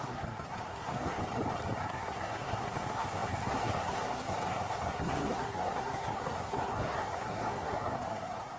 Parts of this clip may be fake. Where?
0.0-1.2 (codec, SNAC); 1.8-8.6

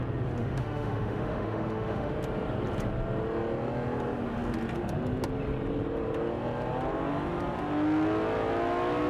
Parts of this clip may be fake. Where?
0.4-2.1 (autoencoder, DAC-VAE)